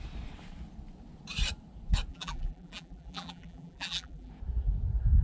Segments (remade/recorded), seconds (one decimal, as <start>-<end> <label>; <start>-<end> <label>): 0.0-2.1 recorded; 2.1-4.3 remade; 4.3-5.2 recorded